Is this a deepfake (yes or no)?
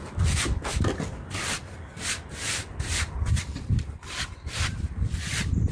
no